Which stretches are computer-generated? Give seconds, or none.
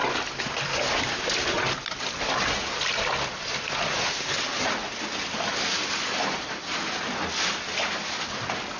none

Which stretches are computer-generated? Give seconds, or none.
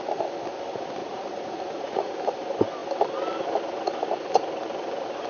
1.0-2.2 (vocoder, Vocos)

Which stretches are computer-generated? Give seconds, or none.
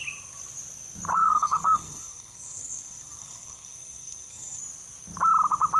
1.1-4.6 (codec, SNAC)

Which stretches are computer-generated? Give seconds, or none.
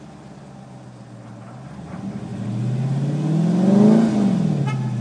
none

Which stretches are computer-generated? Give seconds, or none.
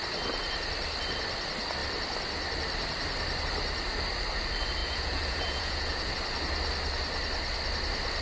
4.8-6.1 (vocoder, Vocos)